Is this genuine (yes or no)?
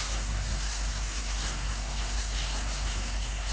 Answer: no